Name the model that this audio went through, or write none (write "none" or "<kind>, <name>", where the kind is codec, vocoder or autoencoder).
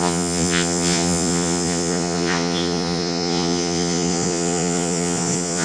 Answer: vocoder, Vocos